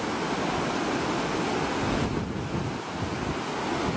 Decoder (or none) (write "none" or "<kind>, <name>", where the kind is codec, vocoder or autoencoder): none